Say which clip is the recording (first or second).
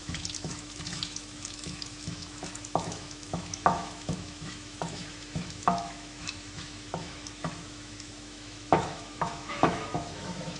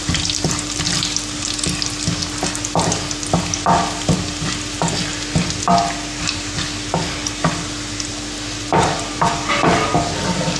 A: second